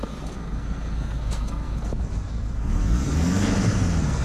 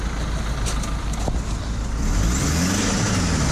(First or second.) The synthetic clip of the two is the first